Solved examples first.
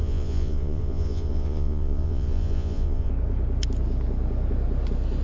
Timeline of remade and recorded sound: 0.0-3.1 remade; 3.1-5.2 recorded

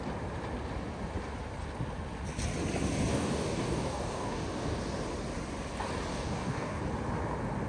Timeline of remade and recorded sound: 0.0-3.1 recorded; 3.1-4.8 remade; 4.8-6.1 recorded; 6.1-6.8 remade; 6.8-7.7 recorded

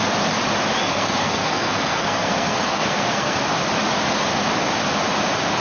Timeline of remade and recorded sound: 0.0-0.8 recorded; 0.8-3.4 remade; 3.4-5.6 recorded